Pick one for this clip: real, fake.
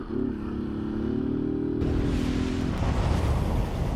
real